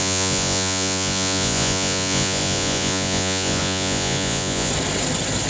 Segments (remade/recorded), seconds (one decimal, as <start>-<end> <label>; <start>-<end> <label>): 0.0-4.7 remade; 4.7-5.5 recorded